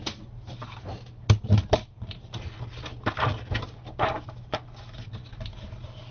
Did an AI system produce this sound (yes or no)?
no